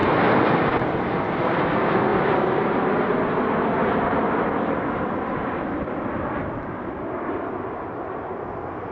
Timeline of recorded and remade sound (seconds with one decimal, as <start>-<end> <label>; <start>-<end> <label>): 0.0-8.9 recorded